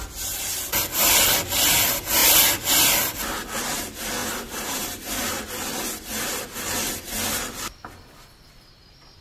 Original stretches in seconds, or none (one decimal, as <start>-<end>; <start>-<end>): 0.0-4.2; 5.4-9.2